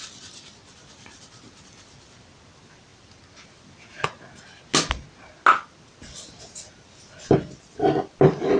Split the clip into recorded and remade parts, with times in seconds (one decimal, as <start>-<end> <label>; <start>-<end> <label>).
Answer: 0.0-8.6 recorded